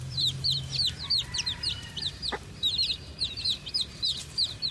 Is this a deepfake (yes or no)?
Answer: yes